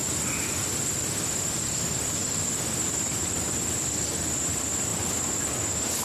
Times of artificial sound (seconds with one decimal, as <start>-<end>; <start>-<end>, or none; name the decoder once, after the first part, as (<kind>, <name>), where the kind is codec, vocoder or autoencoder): 0.0-3.6 (vocoder, BigVGAN v2); 4.9-5.5